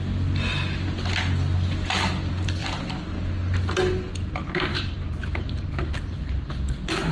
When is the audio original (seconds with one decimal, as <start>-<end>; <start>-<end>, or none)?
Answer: 0.0-2.6; 3.3-4.7; 6.5-7.1